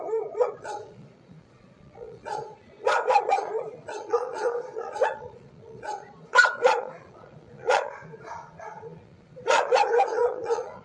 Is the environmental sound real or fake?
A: fake